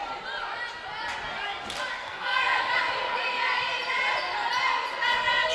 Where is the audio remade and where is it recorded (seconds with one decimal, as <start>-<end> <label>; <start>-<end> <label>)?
0.0-2.0 recorded; 2.0-2.6 remade; 2.6-5.5 recorded